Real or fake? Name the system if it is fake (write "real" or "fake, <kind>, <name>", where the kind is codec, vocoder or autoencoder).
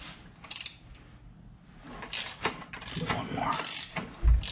real